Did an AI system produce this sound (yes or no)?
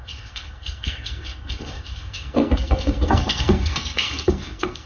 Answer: yes